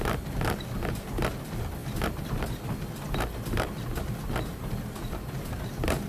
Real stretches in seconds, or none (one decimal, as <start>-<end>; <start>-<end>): 0.0-6.1